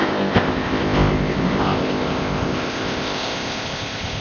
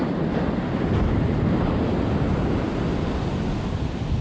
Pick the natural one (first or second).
second